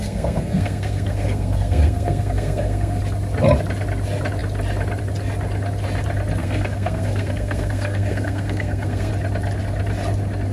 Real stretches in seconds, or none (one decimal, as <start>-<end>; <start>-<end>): 3.0-6.4; 9.1-10.5